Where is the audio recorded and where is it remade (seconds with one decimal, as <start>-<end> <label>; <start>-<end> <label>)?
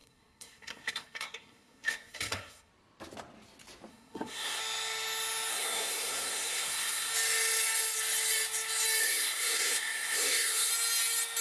0.0-2.7 remade; 2.7-3.9 recorded; 3.9-4.6 remade; 4.6-5.5 recorded; 5.5-7.1 remade; 7.1-9.0 recorded; 9.0-10.7 remade; 10.7-11.4 recorded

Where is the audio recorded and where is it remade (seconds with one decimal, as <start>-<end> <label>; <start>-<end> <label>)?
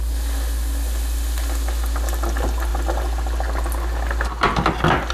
0.0-5.1 recorded